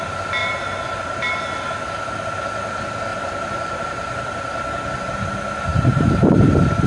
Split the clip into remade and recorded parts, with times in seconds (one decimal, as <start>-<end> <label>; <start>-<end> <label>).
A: 0.0-0.4 recorded; 0.4-1.3 remade; 1.3-3.1 recorded; 3.1-4.9 remade; 4.9-5.7 recorded; 5.7-6.9 remade